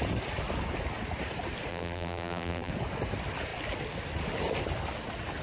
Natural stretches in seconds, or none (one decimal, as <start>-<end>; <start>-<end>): 0.0-1.7; 2.7-5.4